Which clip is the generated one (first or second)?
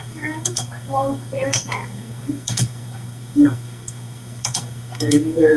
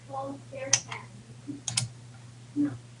first